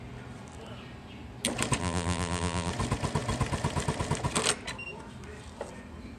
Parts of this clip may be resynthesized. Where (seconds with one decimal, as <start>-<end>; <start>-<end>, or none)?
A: 1.8-2.7